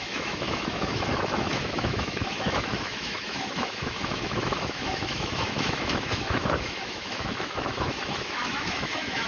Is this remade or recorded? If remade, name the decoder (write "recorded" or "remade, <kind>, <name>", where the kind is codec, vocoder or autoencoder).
remade, autoencoder, DAC-VAE